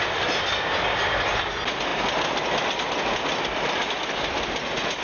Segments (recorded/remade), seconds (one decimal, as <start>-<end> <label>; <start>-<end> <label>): 0.0-5.0 recorded